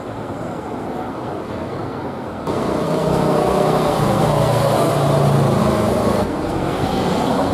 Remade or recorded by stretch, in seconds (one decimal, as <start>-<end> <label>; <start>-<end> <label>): 0.0-4.9 remade; 4.9-5.6 recorded; 5.6-7.5 remade